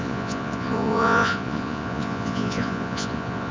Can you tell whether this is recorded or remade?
remade